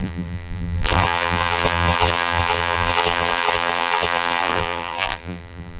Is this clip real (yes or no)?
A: no